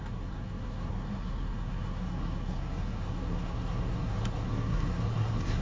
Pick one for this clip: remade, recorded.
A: remade